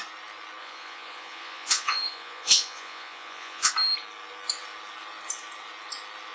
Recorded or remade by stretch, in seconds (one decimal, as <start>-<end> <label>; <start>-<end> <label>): 0.0-0.6 recorded; 0.6-3.7 remade; 3.7-6.3 recorded